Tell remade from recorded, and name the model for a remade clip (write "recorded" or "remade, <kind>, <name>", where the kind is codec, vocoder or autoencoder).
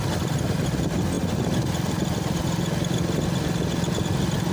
recorded